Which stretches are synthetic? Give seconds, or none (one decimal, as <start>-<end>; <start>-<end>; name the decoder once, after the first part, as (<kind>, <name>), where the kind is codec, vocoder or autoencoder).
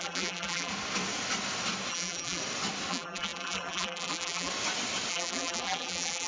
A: 0.0-0.7 (vocoder, BigVGAN v2); 1.9-2.4; 2.9-4.5; 5.1-6.3